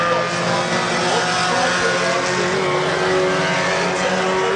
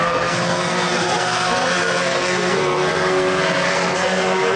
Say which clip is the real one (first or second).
first